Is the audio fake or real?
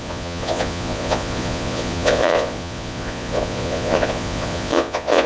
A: fake